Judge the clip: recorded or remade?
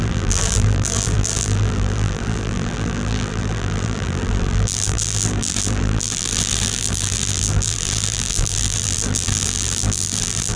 remade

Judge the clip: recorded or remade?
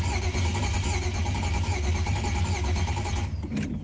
recorded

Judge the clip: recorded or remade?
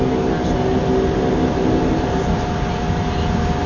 recorded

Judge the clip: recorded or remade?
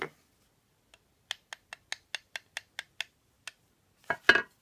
recorded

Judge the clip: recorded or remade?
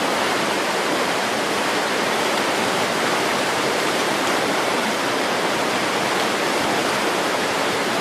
remade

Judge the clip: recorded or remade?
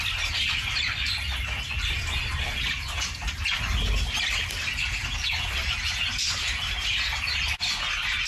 recorded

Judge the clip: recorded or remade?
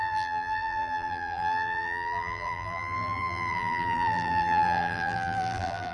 remade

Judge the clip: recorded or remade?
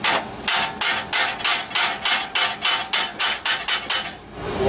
recorded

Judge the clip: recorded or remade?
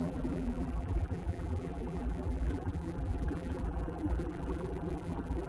remade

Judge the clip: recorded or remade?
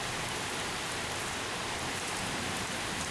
remade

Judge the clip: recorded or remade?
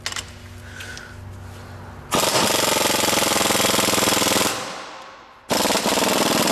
recorded